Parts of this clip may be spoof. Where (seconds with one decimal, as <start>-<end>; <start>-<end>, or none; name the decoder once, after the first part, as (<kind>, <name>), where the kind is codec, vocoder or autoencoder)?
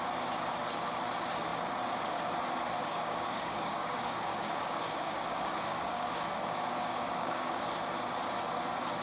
2.8-7.6 (codec, DAC)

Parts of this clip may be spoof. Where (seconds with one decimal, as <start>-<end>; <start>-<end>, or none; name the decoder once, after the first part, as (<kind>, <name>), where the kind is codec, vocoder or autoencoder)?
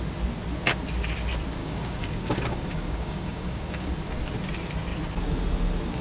1.6-3.9 (codec, DAC)